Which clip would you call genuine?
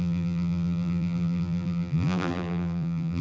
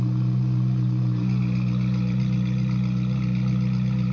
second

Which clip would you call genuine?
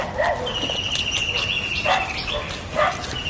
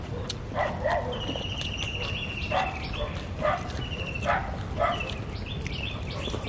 first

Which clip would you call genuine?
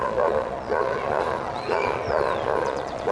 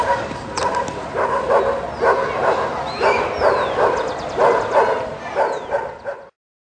second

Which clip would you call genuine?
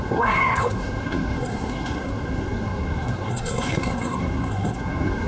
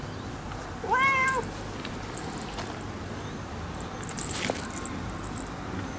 second